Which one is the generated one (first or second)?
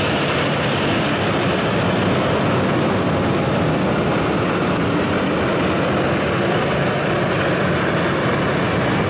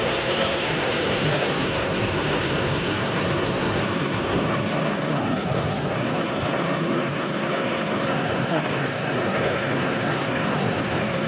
second